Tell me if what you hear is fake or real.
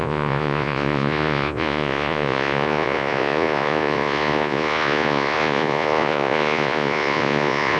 fake